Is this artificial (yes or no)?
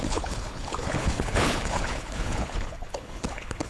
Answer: yes